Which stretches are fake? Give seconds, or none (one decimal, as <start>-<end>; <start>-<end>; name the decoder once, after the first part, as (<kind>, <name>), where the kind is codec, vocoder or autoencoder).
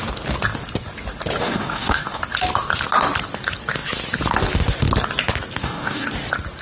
1.4-2.2 (codec, DAC); 5.6-6.1